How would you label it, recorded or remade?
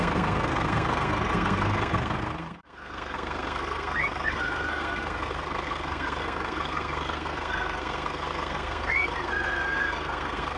remade